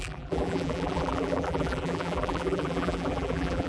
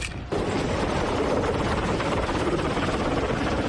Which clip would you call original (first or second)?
second